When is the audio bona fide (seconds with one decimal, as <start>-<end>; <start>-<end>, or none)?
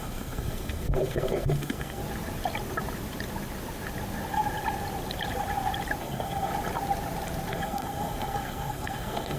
2.0-6.0; 6.5-7.5